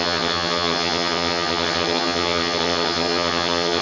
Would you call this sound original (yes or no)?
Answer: no